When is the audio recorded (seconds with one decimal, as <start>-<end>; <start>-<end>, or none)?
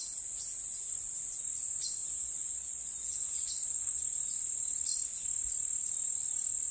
0.0-2.0; 4.0-6.7